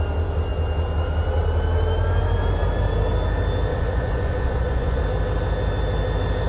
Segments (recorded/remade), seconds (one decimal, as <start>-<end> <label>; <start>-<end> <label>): 0.0-3.7 recorded; 3.7-5.0 remade; 5.0-6.5 recorded